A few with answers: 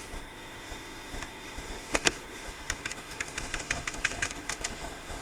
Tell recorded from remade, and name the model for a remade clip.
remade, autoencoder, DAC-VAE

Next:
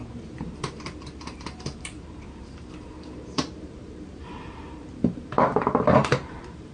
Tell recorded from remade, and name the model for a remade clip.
remade, vocoder, BigVGAN v2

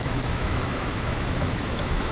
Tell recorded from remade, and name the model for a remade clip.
remade, autoencoder, DAC-VAE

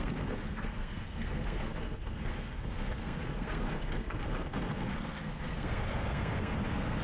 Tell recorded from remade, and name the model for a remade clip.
remade, codec, SNAC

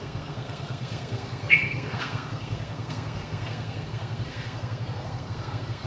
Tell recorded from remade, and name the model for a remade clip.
remade, codec, SNAC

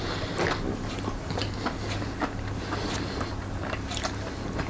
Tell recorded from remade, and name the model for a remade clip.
recorded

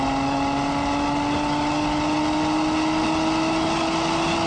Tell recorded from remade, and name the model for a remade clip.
recorded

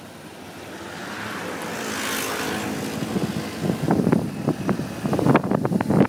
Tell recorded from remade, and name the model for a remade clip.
recorded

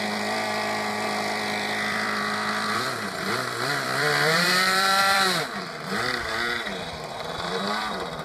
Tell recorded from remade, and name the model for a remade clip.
remade, vocoder, BigVGAN v2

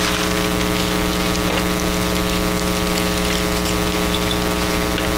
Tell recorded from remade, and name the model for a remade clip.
recorded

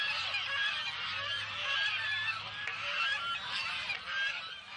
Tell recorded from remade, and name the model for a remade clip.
recorded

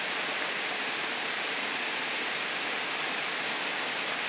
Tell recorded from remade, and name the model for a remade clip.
recorded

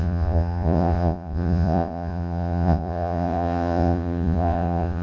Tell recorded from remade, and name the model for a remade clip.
remade, vocoder, Vocos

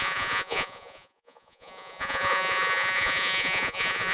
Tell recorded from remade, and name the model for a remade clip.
remade, vocoder, Vocos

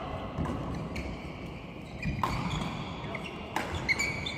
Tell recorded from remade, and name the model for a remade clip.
recorded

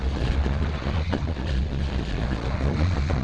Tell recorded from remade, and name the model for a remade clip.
remade, vocoder, Vocos